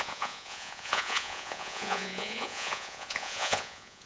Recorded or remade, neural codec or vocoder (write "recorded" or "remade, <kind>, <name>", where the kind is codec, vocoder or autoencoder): remade, vocoder, Vocos